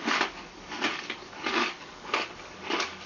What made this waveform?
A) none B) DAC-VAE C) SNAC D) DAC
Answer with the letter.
D